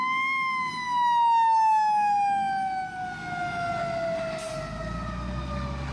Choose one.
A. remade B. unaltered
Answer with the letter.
B